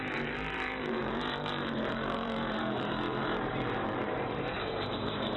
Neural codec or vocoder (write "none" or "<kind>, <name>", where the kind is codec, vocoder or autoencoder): vocoder, BigVGAN v2